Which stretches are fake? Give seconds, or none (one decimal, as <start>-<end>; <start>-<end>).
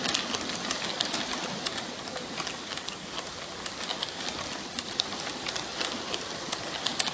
none